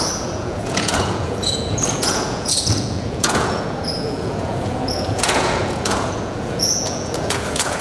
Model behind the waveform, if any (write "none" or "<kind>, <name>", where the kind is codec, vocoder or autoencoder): vocoder, Vocos